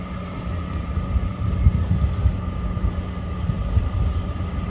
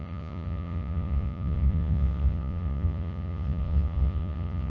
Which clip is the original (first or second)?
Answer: first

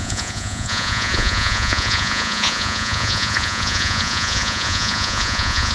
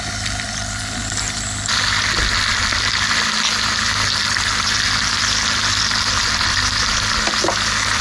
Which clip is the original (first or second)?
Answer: second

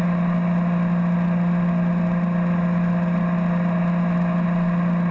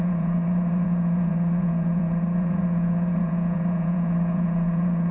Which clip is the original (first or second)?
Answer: first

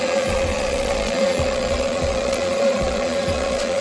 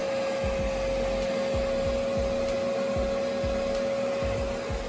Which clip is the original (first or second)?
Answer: second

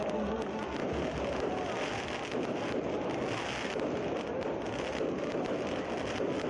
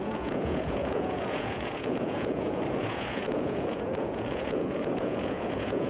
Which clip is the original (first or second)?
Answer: first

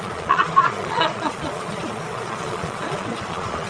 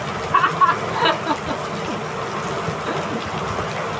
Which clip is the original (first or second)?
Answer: second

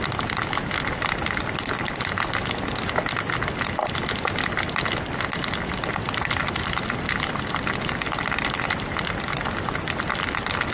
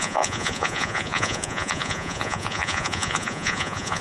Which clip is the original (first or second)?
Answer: first